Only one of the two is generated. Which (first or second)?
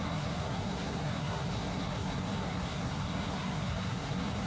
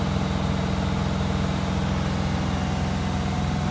first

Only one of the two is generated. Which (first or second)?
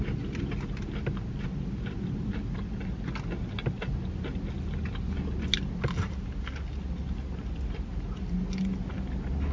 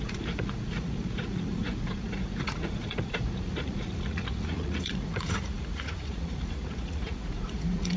second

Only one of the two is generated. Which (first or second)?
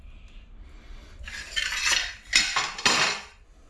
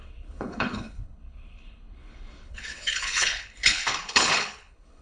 second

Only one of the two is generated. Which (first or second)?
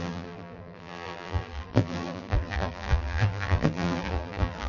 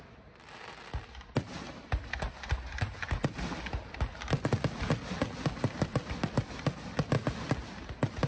first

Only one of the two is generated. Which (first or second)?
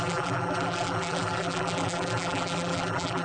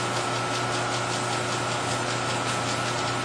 first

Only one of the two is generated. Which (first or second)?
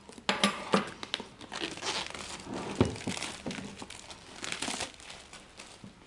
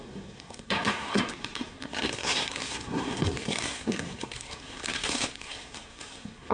second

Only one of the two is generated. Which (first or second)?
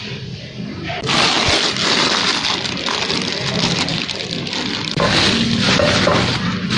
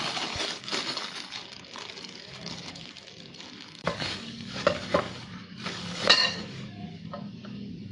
second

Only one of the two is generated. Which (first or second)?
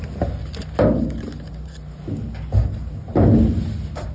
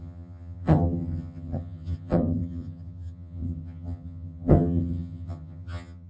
second